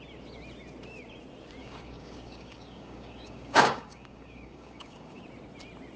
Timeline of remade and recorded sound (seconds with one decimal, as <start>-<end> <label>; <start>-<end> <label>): 0.0-1.6 recorded; 1.6-5.2 remade; 5.2-6.0 recorded